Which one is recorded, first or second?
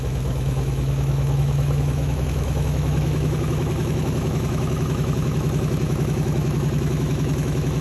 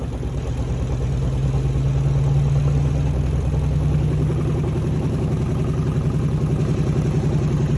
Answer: second